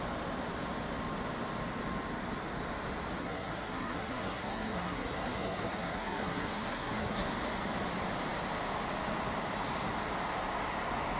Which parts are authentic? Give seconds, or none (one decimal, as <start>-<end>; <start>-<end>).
0.0-3.2; 7.3-11.2